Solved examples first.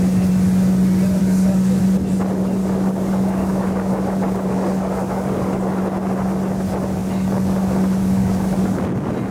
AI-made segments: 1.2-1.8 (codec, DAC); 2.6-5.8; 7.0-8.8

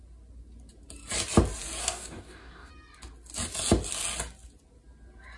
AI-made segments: 1.8-2.7 (codec, DAC)

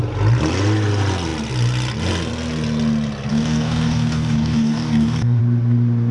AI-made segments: 3.3-5.4 (codec, DAC)

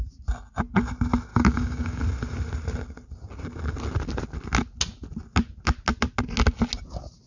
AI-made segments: 1.3-2.0 (codec, DAC)